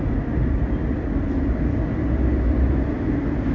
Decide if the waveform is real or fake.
real